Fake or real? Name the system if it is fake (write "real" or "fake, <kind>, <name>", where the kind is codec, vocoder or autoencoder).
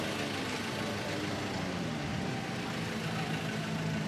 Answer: real